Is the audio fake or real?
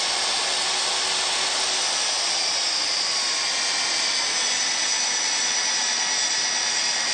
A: real